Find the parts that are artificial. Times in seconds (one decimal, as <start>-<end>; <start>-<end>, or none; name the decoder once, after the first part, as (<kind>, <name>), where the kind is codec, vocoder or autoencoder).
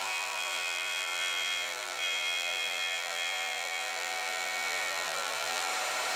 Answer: 0.0-5.7 (vocoder, BigVGAN v2)